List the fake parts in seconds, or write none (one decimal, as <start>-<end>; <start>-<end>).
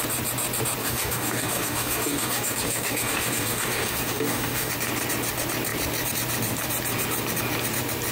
0.8-4.7